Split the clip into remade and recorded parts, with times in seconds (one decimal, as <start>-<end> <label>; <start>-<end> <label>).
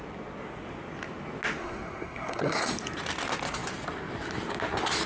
0.0-1.6 recorded; 1.6-2.7 remade; 2.7-5.1 recorded